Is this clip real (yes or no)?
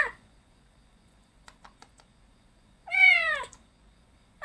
no